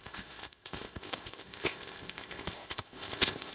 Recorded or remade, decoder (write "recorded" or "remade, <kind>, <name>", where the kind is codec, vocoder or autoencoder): remade, codec, ZipCodec